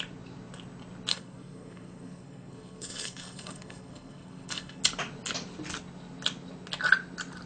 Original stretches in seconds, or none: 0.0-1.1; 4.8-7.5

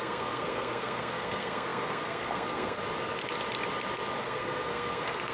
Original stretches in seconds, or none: 2.8-4.2

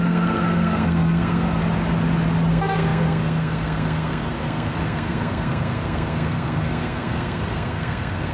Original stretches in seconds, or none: 1.6-2.5

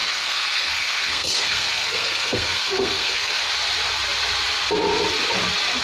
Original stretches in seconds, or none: 3.5-5.8

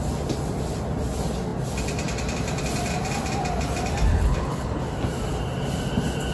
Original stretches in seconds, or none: 0.0-4.1; 4.8-6.3

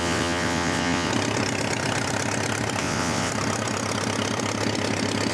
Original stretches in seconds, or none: 1.1-2.8; 3.3-5.3

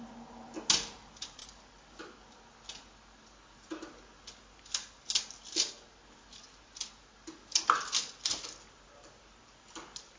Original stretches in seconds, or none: 0.0-10.2

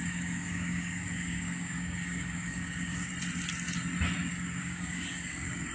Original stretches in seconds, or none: 3.1-4.3